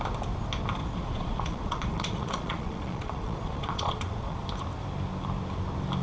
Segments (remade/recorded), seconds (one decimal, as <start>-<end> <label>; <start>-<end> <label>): 0.0-0.8 recorded; 0.8-4.4 remade; 4.4-6.0 recorded